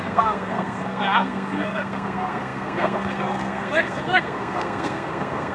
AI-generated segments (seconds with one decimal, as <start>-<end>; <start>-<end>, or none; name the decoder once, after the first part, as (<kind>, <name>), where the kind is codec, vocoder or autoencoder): 0.0-5.5 (codec, SNAC)